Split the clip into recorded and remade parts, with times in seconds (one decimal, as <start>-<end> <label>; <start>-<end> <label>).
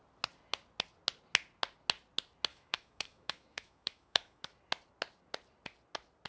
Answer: 0.0-2.5 recorded; 2.5-4.4 remade; 4.4-6.3 recorded